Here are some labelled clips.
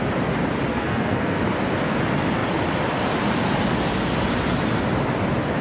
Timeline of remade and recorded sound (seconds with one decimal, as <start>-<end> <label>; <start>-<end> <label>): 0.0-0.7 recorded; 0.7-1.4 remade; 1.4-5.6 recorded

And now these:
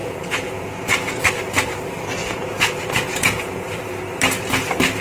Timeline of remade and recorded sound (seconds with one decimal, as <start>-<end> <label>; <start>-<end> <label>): 0.0-1.1 remade; 1.1-2.2 recorded; 2.2-3.6 remade; 3.6-5.0 recorded

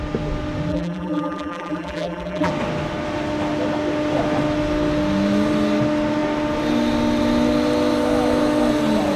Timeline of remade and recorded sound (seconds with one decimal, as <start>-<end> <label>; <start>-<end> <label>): 0.0-0.7 recorded; 0.7-2.5 remade; 2.5-9.2 recorded

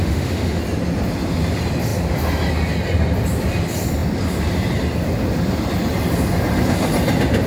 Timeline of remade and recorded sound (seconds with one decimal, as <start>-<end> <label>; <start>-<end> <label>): 0.0-0.6 remade; 0.6-7.5 recorded

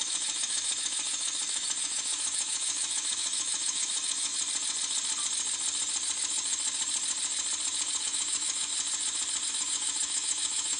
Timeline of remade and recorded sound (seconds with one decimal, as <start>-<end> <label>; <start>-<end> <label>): 0.0-4.3 remade; 4.3-8.0 recorded; 8.0-8.7 remade; 8.7-9.5 recorded; 9.5-10.8 remade